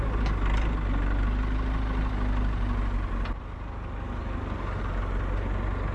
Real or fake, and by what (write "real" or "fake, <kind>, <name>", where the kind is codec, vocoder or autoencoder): real